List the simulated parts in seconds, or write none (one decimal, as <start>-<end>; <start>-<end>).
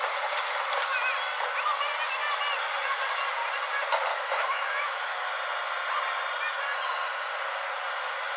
4.1-5.3